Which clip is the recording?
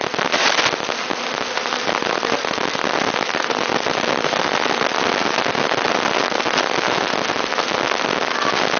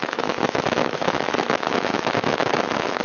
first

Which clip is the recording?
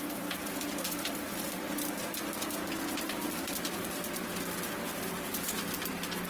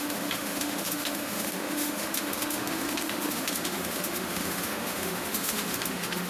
first